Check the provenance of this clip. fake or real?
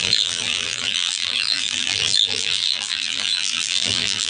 fake